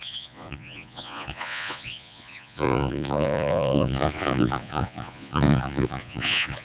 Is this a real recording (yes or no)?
no